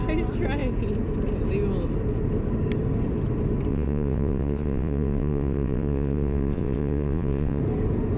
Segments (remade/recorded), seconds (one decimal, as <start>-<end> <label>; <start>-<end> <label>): 0.0-3.7 recorded; 3.7-7.6 remade; 7.6-8.2 recorded